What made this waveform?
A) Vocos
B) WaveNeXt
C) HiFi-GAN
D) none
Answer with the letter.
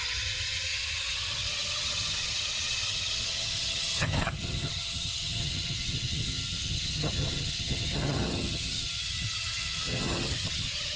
C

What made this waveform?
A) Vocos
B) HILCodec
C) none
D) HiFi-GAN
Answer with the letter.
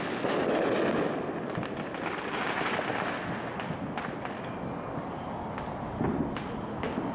C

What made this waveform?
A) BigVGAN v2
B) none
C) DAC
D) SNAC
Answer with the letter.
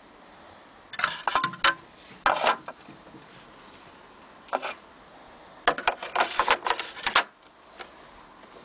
B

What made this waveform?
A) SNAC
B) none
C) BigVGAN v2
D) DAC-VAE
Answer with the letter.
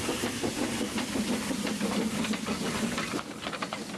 B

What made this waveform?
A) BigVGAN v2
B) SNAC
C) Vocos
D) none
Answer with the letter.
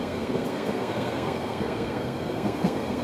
B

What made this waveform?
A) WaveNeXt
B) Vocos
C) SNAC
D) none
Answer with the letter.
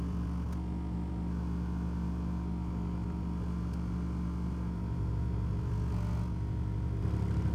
D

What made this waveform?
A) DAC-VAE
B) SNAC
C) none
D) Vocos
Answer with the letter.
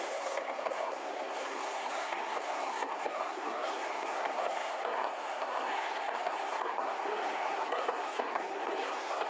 B